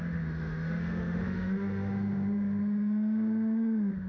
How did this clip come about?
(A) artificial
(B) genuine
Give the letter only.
A